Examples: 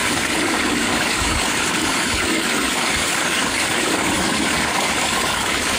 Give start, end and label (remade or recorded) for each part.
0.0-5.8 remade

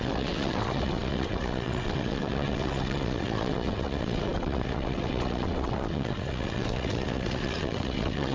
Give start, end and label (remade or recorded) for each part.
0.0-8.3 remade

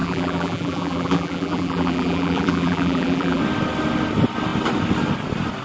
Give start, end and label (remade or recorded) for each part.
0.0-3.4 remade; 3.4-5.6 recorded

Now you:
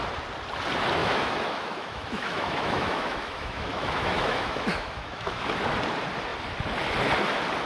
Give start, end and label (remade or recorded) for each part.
0.0-1.0 recorded; 1.0-5.5 remade; 5.5-7.7 recorded

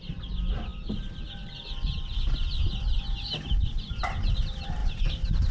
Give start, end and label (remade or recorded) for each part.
0.0-5.5 recorded

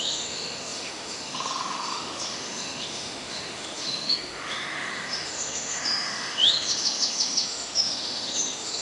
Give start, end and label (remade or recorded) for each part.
0.0-8.8 remade

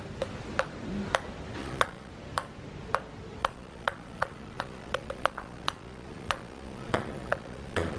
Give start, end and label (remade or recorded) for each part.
0.0-1.6 recorded; 1.6-2.1 remade; 2.1-3.4 recorded; 3.4-8.0 remade

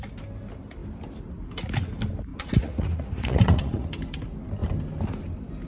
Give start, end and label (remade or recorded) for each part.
0.0-2.3 recorded; 2.3-3.9 remade; 3.9-5.7 recorded